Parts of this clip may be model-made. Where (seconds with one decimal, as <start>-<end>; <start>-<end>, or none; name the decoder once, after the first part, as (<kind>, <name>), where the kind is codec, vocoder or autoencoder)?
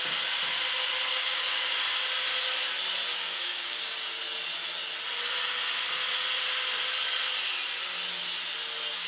1.1-1.8 (codec, DAC); 3.1-4.2